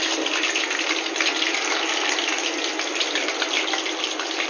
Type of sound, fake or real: real